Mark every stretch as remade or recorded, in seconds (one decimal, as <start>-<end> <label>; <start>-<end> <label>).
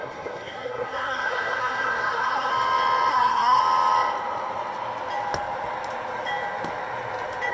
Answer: 0.0-2.5 remade; 2.5-3.1 recorded; 3.1-3.6 remade; 3.6-7.5 recorded